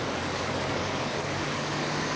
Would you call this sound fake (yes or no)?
yes